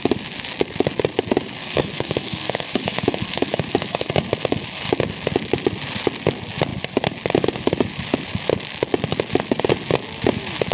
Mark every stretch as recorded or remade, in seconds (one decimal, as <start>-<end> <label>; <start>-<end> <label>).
0.0-1.6 recorded; 1.6-4.1 remade; 4.1-10.7 recorded